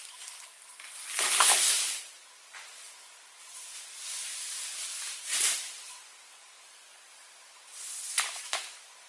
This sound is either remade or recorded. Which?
remade